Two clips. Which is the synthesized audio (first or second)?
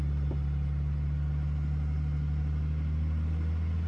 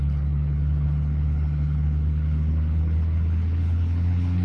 second